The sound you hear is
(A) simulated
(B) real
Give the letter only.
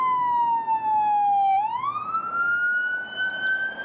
B